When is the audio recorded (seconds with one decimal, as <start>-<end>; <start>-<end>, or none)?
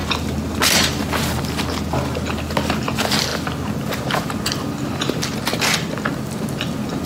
0.0-7.1